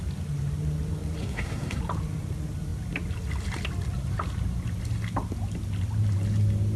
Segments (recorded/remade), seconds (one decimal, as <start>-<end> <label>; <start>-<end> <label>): 0.0-1.2 recorded; 1.2-1.8 remade; 1.8-6.8 recorded